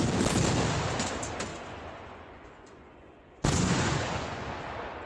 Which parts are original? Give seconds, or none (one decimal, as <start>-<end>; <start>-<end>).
0.0-1.5; 4.6-5.1